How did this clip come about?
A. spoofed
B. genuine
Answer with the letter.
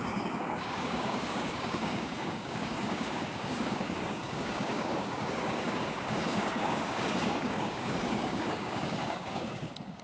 A